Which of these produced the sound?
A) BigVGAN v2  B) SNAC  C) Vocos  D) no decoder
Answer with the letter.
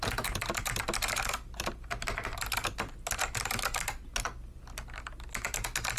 D